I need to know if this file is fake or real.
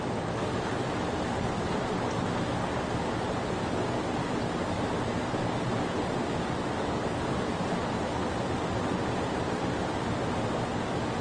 real